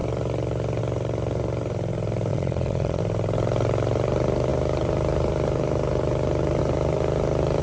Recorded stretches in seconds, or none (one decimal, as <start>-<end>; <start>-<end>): 0.0-2.3; 3.0-7.6